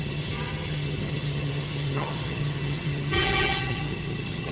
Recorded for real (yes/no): no